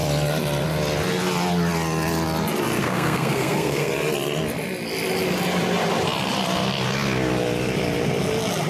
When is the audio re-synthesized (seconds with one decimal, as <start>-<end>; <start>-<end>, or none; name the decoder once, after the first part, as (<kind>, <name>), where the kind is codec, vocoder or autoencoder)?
2.8-3.9 (codec, SNAC)